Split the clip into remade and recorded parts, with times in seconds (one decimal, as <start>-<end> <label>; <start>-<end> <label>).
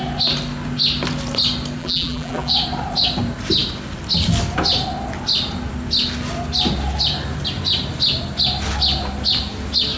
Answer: 0.0-1.8 recorded; 1.8-2.5 remade; 2.5-10.0 recorded